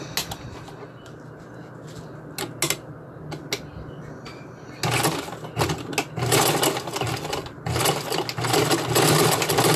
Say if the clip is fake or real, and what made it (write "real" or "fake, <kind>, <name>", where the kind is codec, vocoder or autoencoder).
real